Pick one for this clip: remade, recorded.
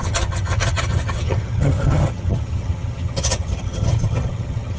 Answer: remade